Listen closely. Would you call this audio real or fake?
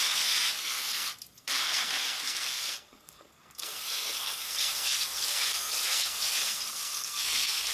fake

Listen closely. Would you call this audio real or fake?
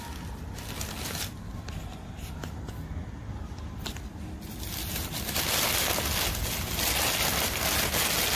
real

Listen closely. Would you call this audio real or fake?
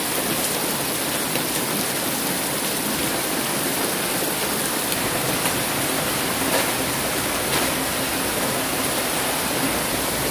real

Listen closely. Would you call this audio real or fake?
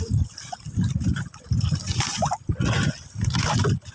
real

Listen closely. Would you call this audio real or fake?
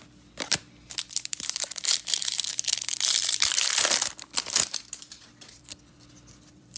fake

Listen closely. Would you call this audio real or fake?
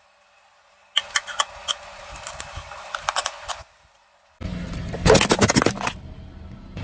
real